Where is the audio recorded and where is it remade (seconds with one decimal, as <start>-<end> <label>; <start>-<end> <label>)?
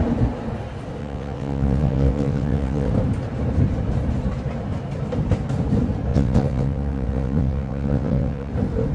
0.0-1.0 recorded; 1.0-2.9 remade; 2.9-6.1 recorded; 6.1-8.5 remade; 8.5-8.9 recorded